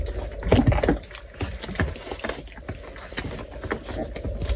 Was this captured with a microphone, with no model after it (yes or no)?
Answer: yes